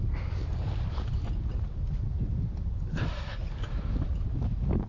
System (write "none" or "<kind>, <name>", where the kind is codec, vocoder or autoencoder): none